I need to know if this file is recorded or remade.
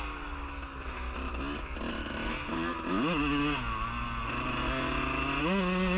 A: recorded